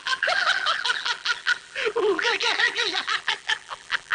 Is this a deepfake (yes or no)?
yes